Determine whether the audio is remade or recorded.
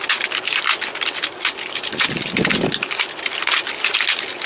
recorded